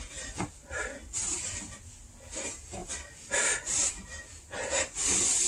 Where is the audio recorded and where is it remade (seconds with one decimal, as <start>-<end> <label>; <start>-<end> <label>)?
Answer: 0.0-5.5 remade